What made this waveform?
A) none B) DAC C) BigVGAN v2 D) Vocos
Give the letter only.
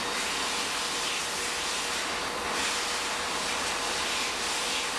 A